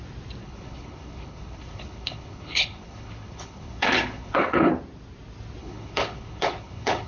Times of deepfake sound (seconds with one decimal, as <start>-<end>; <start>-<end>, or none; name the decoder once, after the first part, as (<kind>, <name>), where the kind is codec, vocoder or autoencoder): 0.4-4.7 (codec, HILCodec); 5.6-7.1